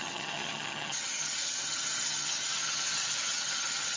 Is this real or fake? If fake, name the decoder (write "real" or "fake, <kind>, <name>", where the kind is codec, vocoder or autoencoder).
fake, vocoder, HiFi-GAN